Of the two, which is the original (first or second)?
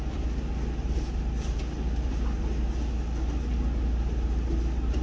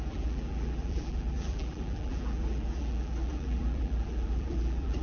first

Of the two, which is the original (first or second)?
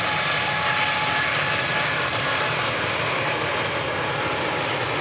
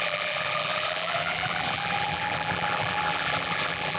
first